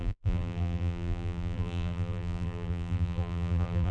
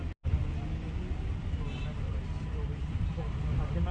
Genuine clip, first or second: second